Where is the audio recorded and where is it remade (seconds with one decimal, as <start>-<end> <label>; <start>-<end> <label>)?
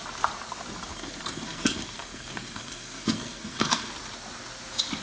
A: 0.0-0.9 recorded; 0.9-3.9 remade; 3.9-5.0 recorded